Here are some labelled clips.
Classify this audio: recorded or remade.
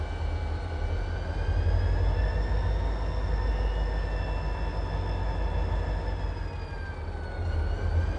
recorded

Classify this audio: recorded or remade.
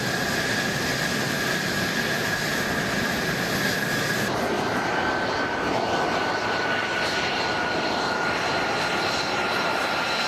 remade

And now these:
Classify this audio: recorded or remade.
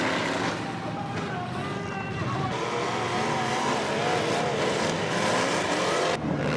recorded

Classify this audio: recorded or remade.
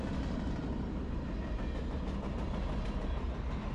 recorded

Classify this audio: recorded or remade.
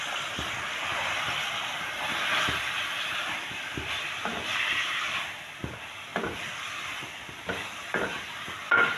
remade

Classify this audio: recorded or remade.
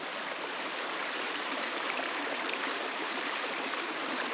remade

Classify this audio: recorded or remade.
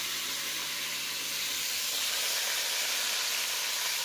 remade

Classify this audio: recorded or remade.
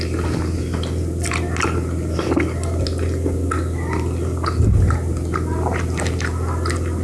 recorded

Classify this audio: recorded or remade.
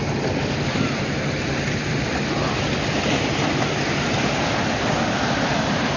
recorded